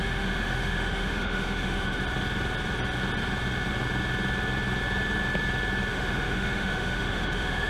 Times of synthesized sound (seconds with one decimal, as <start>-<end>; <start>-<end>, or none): 0.0-2.0; 5.9-7.7